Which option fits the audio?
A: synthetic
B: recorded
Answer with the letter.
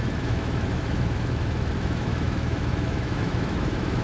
A